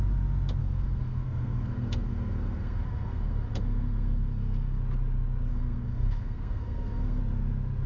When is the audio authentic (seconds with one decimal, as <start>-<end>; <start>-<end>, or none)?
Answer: 0.0-0.6; 4.8-5.5; 7.2-7.9